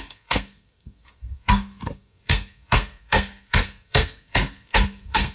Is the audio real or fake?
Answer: fake